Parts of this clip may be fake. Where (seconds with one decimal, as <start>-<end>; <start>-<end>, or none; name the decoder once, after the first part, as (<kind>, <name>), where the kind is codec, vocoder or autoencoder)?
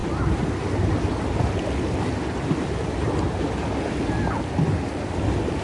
none